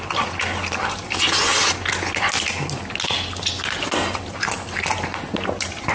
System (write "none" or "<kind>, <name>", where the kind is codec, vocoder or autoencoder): none